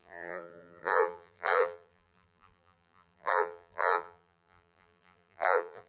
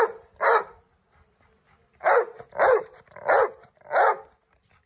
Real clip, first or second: second